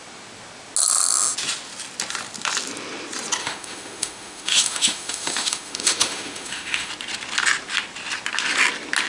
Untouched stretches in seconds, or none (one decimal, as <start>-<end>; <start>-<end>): 0.0-3.4; 6.9-9.1